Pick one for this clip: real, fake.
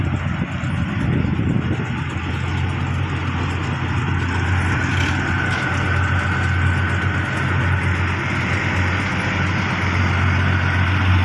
real